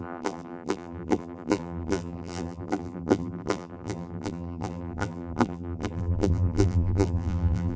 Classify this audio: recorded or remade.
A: remade